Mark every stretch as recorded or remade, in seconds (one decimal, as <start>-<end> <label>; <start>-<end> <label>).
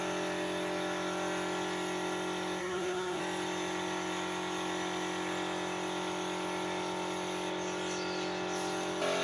0.0-2.6 recorded; 2.6-3.2 remade; 3.2-9.2 recorded